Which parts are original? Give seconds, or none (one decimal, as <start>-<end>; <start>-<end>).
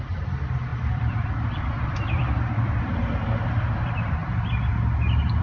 4.2-5.4